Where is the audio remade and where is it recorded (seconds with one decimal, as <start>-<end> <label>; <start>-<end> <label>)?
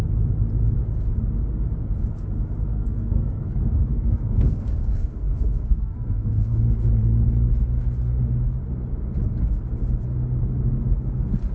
0.0-2.7 recorded; 2.7-6.6 remade; 6.6-11.5 recorded